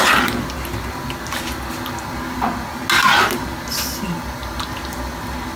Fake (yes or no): no